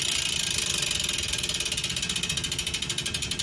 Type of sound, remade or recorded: recorded